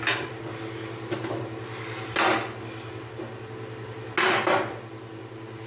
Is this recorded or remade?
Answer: recorded